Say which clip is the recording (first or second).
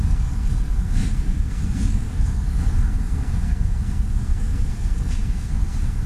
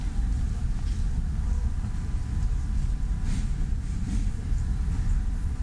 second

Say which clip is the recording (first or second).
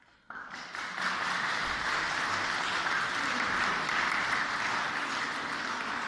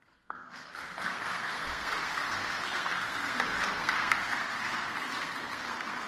first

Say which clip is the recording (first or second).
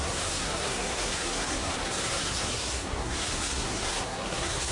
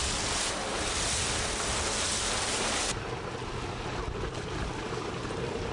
second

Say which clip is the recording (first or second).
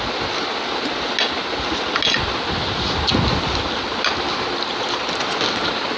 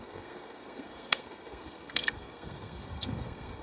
first